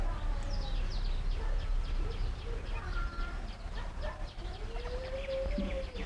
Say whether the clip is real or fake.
real